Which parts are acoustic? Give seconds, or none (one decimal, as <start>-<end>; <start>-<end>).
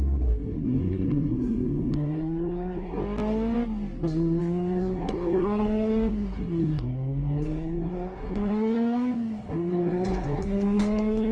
3.0-4.4